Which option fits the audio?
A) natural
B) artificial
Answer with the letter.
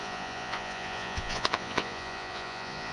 B